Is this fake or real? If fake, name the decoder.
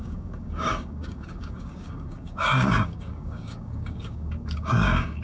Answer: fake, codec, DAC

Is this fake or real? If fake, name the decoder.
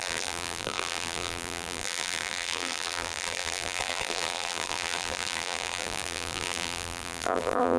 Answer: fake, vocoder, BigVGAN v2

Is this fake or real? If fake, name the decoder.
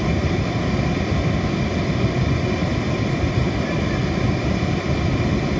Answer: real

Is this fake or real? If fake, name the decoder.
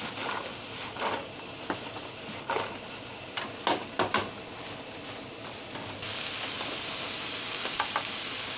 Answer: real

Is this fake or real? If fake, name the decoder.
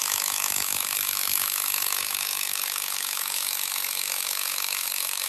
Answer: fake, autoencoder, DAC-VAE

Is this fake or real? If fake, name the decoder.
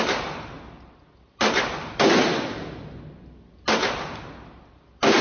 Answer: real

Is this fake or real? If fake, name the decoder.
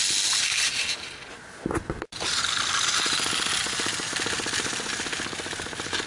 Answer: real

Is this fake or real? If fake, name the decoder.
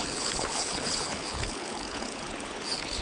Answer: fake, codec, HILCodec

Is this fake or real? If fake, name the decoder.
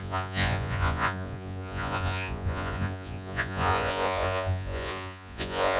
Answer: fake, vocoder, Vocos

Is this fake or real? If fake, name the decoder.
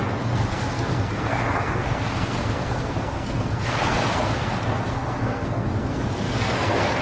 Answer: fake, codec, SNAC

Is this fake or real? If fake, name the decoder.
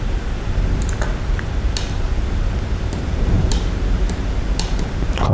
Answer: real